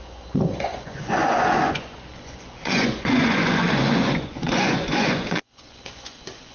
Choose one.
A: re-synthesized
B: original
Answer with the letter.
A